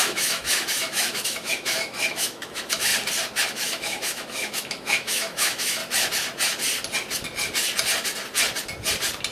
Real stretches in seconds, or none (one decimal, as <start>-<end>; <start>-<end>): 2.9-3.5; 5.8-9.3